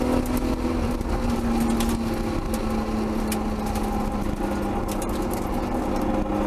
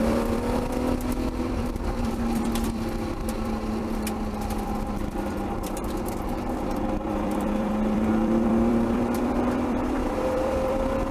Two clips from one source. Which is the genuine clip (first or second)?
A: first